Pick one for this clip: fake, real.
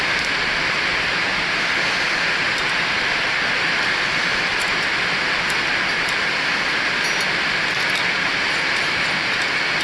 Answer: real